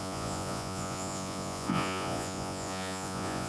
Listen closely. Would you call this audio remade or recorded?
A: remade